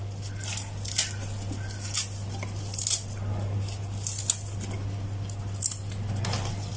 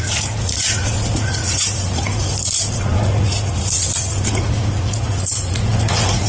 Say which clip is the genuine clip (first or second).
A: first